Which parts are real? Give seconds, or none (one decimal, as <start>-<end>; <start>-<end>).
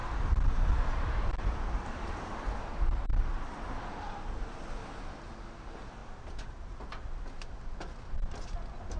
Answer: 2.7-6.0; 7.2-9.0